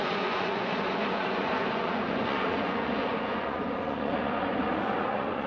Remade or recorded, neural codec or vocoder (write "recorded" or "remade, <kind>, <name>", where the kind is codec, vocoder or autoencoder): remade, vocoder, Vocos